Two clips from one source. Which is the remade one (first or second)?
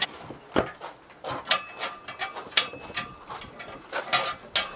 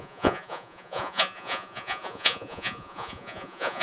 second